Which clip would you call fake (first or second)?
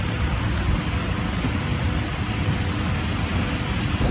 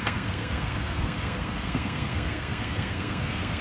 second